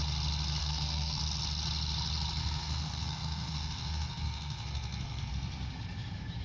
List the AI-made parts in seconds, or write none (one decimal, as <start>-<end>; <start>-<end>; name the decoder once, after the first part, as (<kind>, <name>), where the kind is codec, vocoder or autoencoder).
0.6-1.2 (codec, SNAC); 2.4-5.3